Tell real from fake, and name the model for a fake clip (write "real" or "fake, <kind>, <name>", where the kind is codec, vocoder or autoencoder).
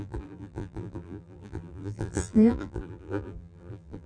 fake, vocoder, BigVGAN v2